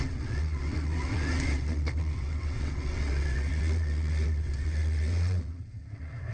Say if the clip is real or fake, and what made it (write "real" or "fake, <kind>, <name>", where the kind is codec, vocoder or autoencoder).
fake, vocoder, WaveNeXt